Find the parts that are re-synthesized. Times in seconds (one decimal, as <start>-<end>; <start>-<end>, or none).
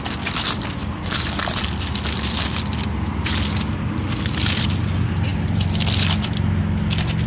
none